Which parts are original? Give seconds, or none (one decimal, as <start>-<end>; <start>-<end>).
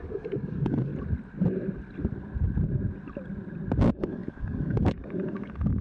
0.9-3.8